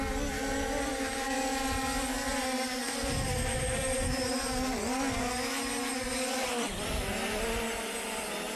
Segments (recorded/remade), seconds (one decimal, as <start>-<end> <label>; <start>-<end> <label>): 0.0-2.3 recorded; 2.3-4.4 remade; 4.4-8.6 recorded